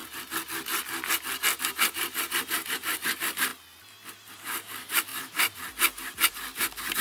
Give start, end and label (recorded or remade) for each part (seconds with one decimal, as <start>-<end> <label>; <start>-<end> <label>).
0.0-1.6 recorded; 1.6-3.5 remade; 3.5-4.3 recorded; 4.3-5.1 remade; 5.1-6.3 recorded; 6.3-7.0 remade